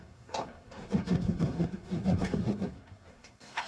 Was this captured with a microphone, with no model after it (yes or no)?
no